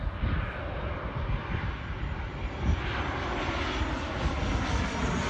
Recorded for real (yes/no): yes